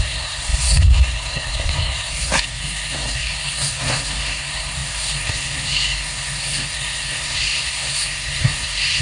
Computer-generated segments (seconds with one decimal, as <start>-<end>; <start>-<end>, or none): 0.0-9.0